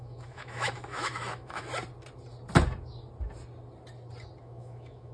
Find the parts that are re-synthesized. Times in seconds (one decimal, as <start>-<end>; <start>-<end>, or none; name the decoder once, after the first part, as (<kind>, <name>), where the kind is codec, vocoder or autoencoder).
0.0-1.7 (autoencoder, DAC-VAE); 4.4-5.1